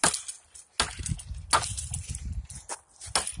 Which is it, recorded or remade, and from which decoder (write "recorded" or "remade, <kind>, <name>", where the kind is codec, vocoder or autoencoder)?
recorded